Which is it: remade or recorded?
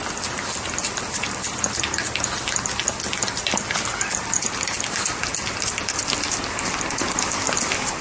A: recorded